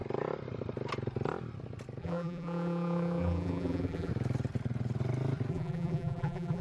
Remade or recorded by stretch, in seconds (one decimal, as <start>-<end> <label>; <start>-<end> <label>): 0.0-2.0 recorded; 2.0-4.1 remade; 4.1-5.5 recorded; 5.5-6.6 remade